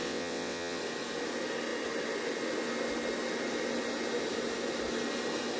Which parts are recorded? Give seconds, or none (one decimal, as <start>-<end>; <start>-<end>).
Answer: 0.8-5.6